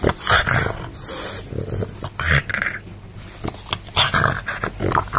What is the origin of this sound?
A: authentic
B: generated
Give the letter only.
A